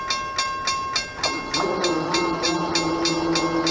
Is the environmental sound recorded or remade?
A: recorded